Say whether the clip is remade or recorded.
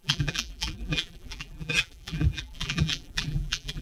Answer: remade